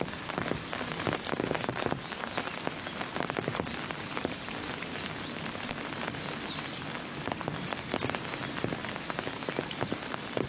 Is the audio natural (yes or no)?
yes